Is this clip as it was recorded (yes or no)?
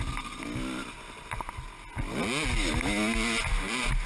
yes